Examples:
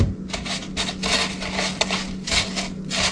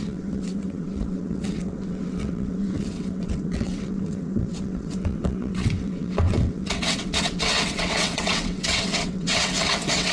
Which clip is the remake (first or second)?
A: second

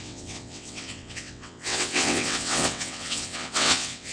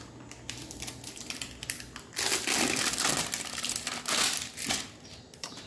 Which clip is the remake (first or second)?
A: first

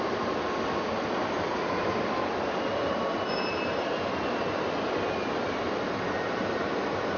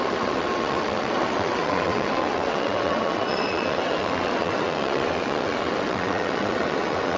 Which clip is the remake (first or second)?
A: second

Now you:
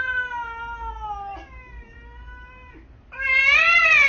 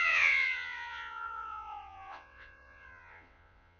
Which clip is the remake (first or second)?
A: second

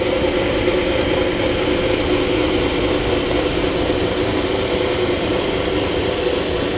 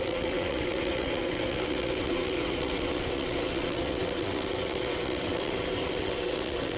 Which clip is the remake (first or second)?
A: second